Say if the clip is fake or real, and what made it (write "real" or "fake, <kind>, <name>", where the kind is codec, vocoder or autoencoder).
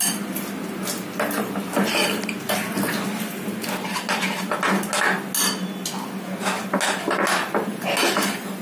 real